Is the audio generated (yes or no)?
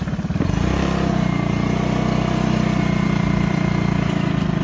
no